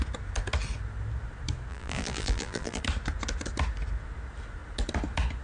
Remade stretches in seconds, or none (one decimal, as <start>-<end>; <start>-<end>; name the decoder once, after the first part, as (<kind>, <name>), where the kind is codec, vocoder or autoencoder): 1.7-2.8 (vocoder, BigVGAN v2)